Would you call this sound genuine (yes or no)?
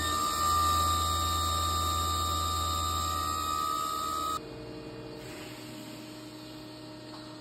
yes